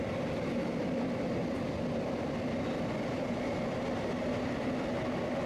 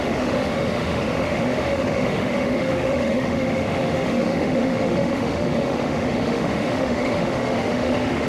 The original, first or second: first